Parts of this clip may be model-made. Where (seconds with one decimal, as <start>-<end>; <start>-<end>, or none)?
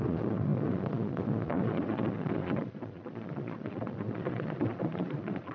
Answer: 0.0-5.5